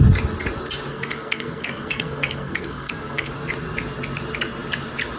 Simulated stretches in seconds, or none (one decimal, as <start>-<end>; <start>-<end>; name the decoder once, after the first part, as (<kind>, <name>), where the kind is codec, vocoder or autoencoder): 0.9-3.3 (codec, SNAC)